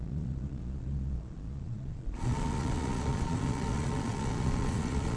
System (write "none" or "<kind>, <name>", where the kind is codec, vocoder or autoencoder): vocoder, Vocos